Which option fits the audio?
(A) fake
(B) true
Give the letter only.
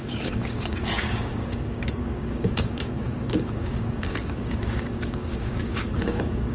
A